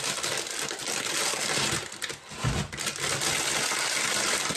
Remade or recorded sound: recorded